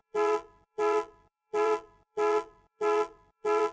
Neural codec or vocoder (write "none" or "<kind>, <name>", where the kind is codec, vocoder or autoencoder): vocoder, BigVGAN v2